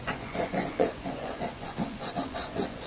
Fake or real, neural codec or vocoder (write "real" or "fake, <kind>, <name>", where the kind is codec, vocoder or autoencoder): fake, vocoder, Vocos